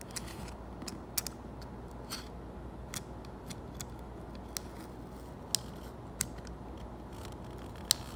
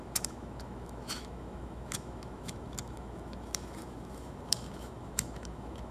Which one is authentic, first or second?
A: first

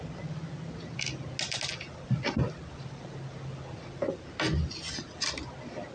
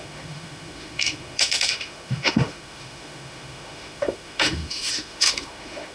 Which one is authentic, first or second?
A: first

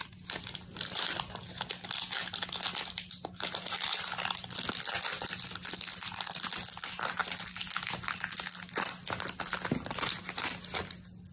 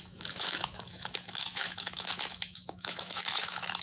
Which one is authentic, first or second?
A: first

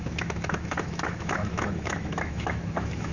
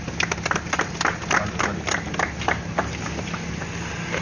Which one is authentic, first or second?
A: second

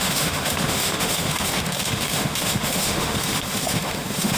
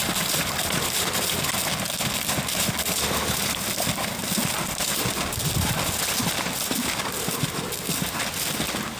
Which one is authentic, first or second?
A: second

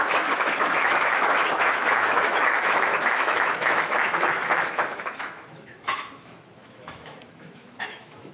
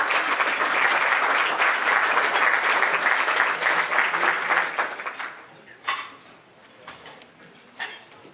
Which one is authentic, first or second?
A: second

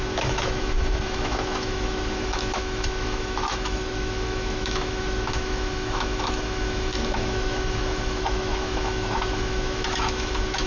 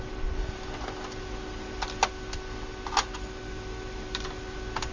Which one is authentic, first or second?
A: second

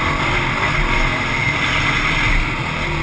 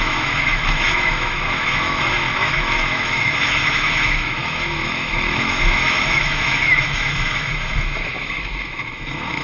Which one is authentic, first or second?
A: first